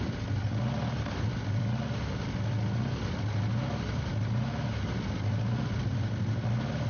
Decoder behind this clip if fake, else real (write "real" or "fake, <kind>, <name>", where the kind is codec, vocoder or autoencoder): real